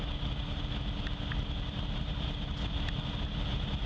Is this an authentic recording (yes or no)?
yes